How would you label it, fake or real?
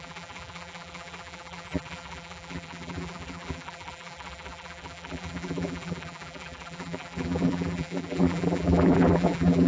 fake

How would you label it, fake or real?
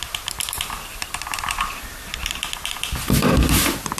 fake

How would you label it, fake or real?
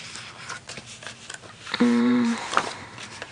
fake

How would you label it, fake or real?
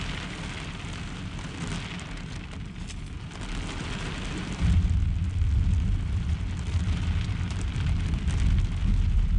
real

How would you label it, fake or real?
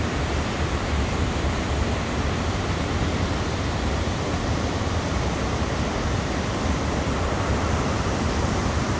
fake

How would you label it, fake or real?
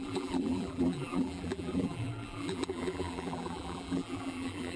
fake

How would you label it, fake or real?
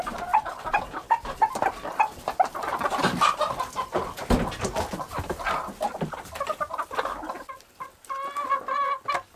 real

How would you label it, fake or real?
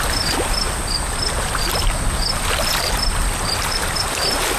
real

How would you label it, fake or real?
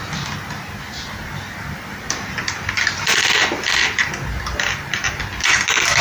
real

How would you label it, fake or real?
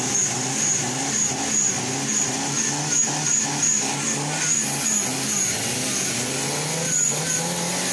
real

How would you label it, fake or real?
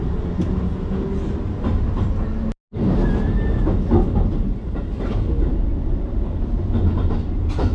real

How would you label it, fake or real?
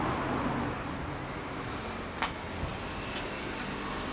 real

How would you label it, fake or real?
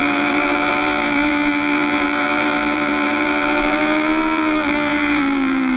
fake